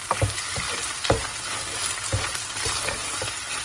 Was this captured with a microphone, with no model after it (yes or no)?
yes